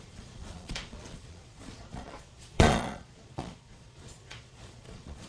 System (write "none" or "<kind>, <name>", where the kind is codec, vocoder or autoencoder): vocoder, Vocos